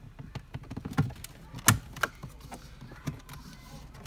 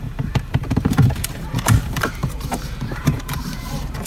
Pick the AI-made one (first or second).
second